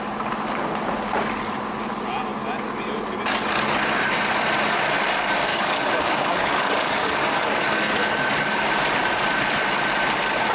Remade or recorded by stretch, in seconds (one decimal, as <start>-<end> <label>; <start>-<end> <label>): 0.0-5.5 recorded; 5.5-8.6 remade; 8.6-10.5 recorded